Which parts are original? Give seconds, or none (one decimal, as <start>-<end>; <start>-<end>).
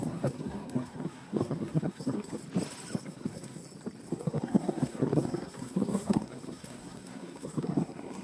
2.4-3.0; 3.6-4.1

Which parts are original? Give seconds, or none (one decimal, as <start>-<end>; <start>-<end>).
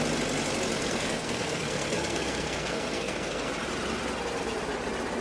0.0-0.8; 3.5-5.2